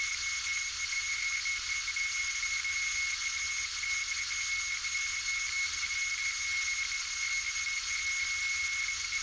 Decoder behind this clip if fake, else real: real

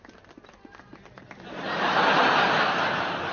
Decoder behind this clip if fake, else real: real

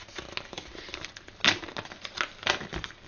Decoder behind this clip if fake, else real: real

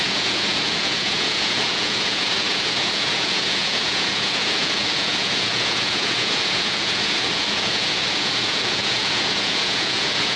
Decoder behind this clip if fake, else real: fake, vocoder, Vocos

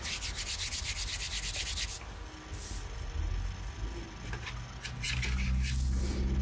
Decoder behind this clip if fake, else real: real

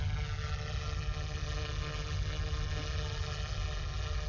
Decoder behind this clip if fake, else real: real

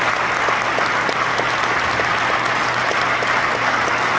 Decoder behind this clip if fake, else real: real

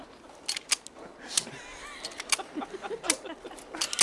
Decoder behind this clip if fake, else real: real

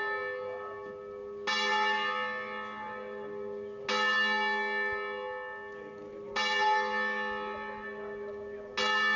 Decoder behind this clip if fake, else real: real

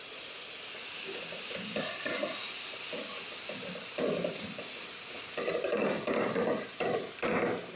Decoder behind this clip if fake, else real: real